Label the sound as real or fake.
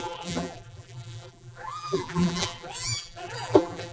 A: fake